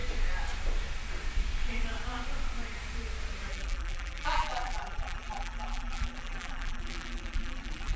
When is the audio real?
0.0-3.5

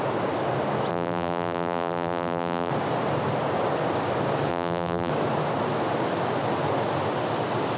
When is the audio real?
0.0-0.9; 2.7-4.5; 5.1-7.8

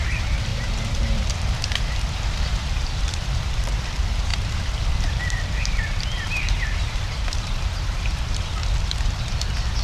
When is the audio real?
8.6-9.8